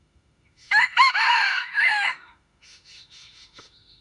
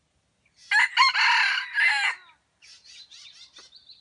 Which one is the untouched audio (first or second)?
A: second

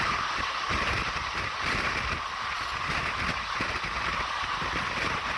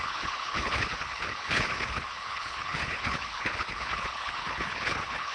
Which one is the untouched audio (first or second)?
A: first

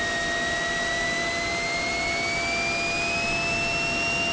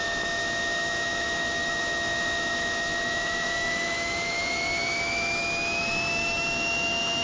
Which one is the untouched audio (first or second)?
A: first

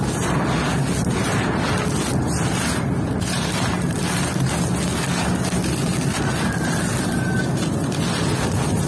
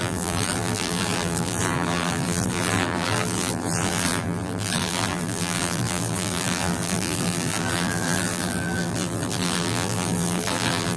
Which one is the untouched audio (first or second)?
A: first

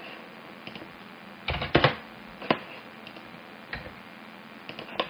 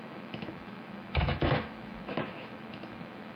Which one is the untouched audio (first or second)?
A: first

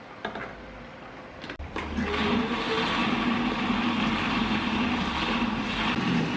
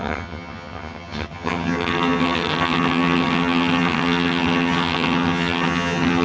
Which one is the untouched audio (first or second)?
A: first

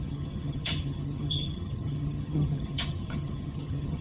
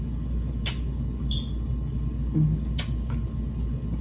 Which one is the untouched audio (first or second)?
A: second